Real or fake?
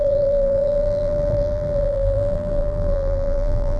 fake